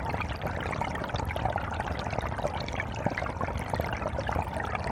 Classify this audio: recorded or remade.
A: recorded